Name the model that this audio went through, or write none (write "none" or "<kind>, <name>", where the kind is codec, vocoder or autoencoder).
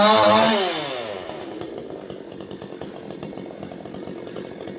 none